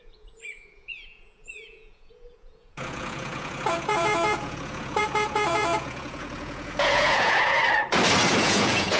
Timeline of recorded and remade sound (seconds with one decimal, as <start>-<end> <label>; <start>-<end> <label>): 0.0-7.6 remade; 7.6-8.4 recorded; 8.4-9.0 remade